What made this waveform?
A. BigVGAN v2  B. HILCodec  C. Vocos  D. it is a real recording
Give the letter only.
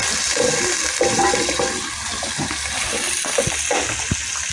D